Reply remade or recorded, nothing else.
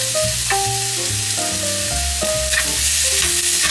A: recorded